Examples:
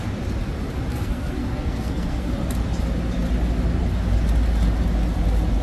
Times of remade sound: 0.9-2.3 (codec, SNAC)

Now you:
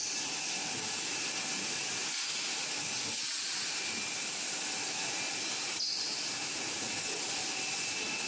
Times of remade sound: none

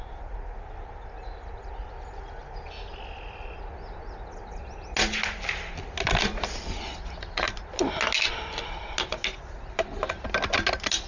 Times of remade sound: none

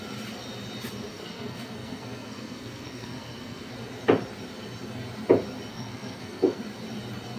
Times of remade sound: 1.1-3.7 (codec, SNAC); 5.7-6.6

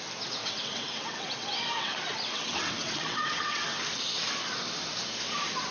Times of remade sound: 0.4-3.8 (vocoder, WaveNeXt)

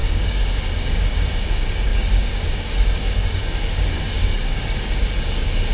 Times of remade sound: 0.0-5.7 (codec, DAC)